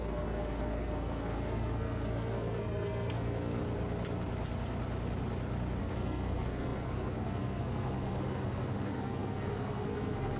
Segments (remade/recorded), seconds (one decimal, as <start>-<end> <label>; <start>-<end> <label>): 0.0-3.6 remade; 3.6-5.8 recorded; 5.8-10.4 remade